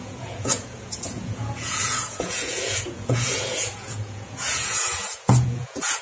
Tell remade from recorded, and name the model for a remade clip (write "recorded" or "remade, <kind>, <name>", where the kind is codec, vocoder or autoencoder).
remade, vocoder, Vocos